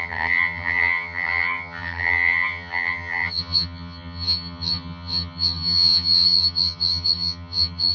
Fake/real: fake